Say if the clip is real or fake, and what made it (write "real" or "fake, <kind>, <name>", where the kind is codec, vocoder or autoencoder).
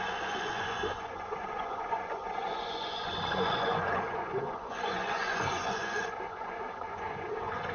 fake, vocoder, Vocos